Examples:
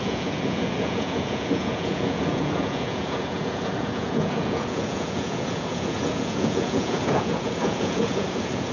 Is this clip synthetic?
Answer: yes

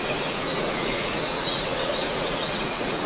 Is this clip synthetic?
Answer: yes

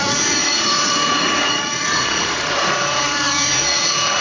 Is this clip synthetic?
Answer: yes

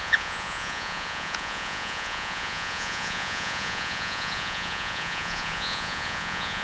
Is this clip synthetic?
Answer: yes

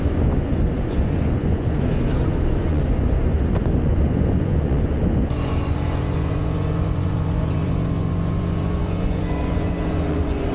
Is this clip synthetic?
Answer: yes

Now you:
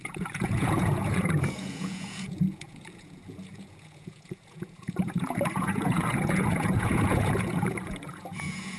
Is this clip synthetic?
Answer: yes